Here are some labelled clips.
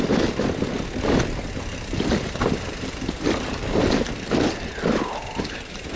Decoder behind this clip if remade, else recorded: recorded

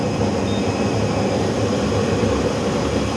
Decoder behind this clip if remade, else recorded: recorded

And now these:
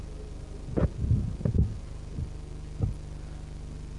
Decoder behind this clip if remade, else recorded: recorded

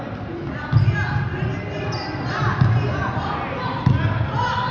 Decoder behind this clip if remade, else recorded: recorded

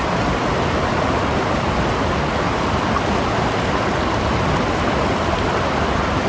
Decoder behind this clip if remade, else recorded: recorded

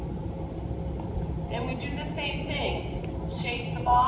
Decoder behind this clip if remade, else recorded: recorded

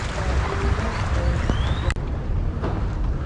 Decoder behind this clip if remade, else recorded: recorded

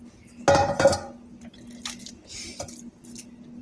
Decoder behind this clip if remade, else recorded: recorded